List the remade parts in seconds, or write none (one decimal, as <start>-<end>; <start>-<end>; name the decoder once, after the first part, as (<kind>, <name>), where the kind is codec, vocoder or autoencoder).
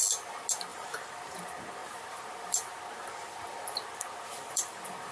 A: 0.7-1.4 (vocoder, BigVGAN v2); 1.8-5.1